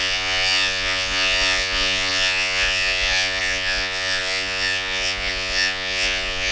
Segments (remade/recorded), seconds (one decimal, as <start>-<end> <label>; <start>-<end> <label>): 0.0-6.5 remade